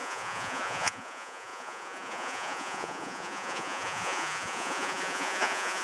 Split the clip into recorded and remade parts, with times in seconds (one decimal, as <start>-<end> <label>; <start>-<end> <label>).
0.0-5.8 remade